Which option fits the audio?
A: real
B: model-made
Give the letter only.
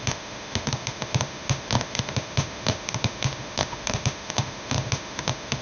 B